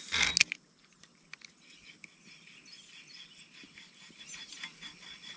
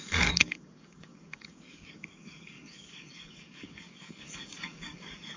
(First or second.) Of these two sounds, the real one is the first